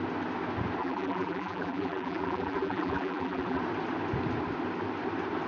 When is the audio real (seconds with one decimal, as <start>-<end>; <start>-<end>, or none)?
0.0-0.8; 3.6-5.5